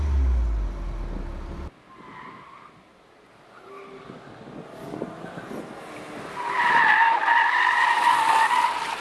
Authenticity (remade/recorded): recorded